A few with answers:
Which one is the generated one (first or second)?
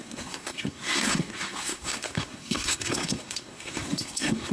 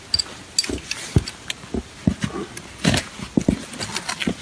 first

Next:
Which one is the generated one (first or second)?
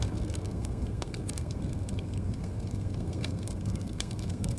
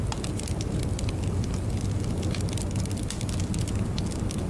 first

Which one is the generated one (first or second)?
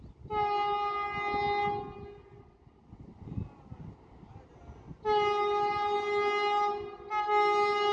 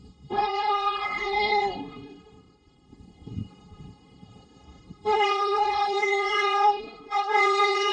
second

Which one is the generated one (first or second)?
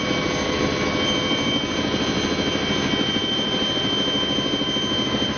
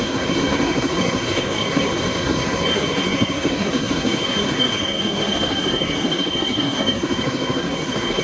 second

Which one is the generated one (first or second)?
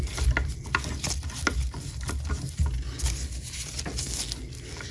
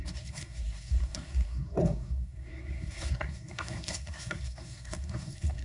second